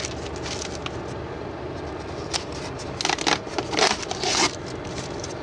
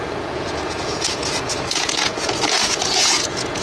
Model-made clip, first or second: second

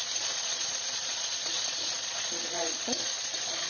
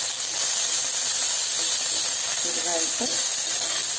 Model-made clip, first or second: first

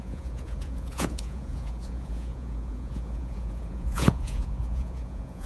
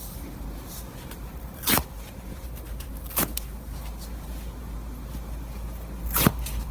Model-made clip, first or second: first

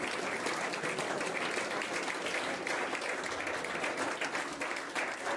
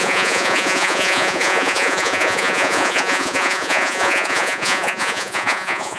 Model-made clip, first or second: second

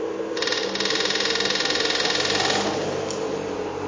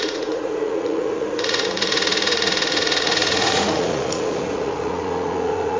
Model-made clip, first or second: second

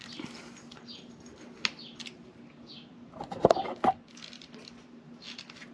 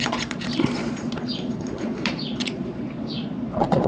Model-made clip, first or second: second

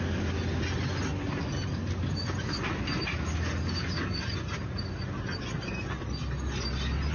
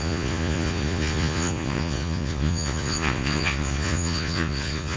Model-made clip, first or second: second